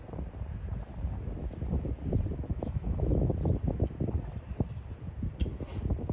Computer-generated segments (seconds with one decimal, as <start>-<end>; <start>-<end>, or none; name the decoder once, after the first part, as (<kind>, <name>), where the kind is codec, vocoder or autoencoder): 2.5-3.3 (autoencoder, DAC-VAE)